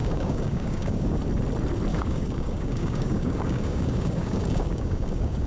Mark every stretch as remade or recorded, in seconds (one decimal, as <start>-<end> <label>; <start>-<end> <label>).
0.0-1.2 remade; 1.2-1.9 recorded; 1.9-5.5 remade